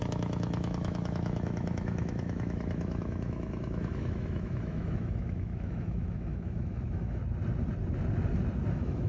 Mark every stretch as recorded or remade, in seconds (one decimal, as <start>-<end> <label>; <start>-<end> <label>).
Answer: 0.0-7.2 remade; 7.2-8.7 recorded; 8.7-9.1 remade